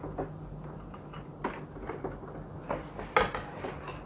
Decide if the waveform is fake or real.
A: real